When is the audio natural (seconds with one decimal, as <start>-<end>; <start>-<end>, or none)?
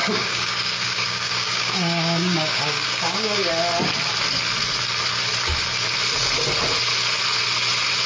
3.5-8.1